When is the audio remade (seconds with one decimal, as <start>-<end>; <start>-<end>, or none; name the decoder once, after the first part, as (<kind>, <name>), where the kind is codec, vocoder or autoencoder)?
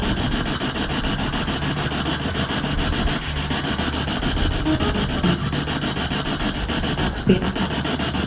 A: none